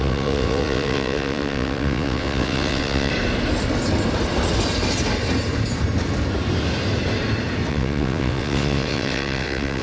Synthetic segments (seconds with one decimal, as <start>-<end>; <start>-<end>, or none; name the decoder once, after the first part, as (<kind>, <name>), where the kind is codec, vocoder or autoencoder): 0.0-3.1 (vocoder, WaveNeXt); 7.7-9.8

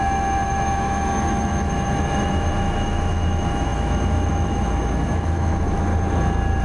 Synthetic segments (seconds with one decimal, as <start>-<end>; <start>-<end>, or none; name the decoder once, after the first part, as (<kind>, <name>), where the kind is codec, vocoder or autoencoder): 0.0-5.9 (autoencoder, DAC-VAE)